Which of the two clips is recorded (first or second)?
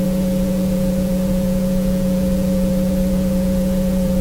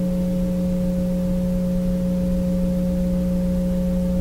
second